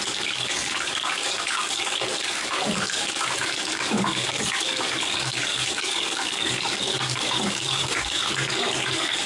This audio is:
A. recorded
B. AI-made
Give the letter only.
B